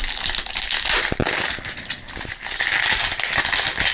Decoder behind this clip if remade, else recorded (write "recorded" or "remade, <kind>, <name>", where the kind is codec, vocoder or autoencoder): recorded